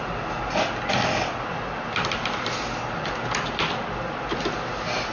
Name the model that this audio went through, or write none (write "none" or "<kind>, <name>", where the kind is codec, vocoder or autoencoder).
none